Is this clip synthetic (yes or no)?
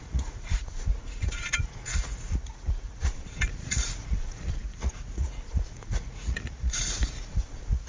yes